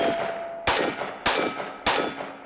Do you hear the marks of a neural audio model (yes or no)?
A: no